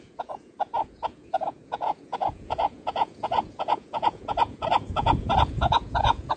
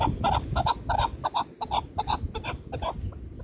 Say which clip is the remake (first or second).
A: first